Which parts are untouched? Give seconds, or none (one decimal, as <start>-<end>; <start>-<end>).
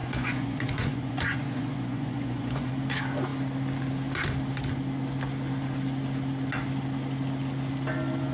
2.7-8.3